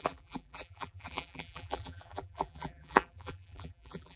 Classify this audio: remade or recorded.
remade